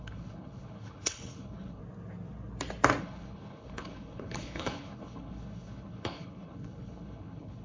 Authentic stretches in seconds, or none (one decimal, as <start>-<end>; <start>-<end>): 1.8-3.0